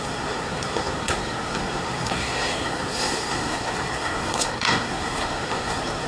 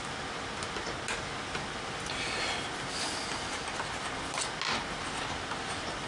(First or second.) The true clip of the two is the second